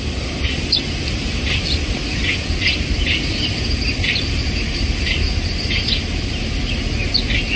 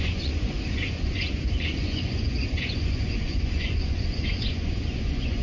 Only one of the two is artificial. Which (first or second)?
second